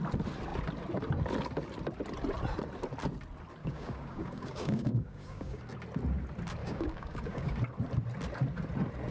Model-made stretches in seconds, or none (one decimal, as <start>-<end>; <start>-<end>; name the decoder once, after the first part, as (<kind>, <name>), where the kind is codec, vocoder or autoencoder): 3.6-5.6 (codec, DAC); 6.6-7.5

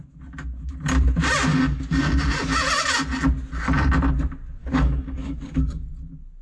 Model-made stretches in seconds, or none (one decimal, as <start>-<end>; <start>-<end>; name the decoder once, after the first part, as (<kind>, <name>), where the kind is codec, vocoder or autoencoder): 1.5-2.0 (codec, DAC); 4.6-5.9

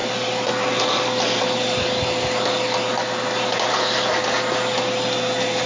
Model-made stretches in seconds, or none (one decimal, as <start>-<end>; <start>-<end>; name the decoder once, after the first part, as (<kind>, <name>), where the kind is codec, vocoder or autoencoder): none

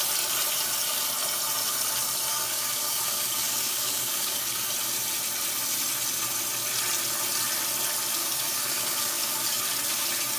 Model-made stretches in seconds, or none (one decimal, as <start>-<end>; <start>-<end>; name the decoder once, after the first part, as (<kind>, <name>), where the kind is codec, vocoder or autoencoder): 2.3-4.7 (codec, DAC); 8.2-9.6